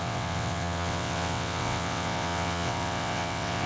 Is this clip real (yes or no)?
no